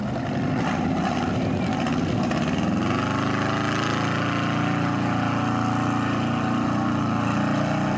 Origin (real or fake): real